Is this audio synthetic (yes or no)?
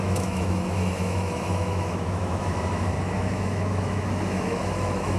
yes